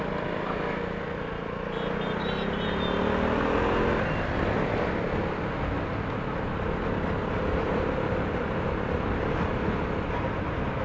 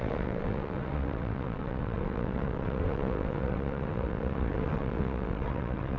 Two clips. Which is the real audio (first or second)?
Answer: first